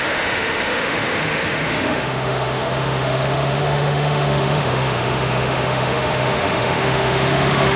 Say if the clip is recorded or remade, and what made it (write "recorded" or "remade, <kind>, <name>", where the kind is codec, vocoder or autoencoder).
remade, autoencoder, DAC-VAE